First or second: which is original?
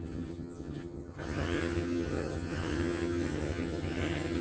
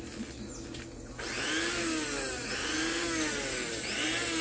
second